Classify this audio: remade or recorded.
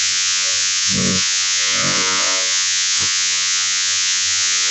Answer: remade